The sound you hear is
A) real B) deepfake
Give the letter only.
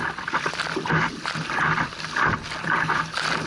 A